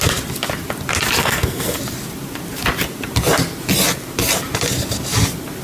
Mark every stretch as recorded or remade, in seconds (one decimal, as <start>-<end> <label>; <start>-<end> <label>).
0.0-1.2 recorded; 1.2-1.8 remade; 1.8-5.6 recorded